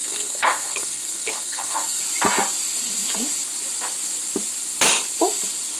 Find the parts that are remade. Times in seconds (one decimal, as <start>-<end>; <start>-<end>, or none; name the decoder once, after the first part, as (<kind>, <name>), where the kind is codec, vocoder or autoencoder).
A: 0.0-2.0 (codec, SNAC)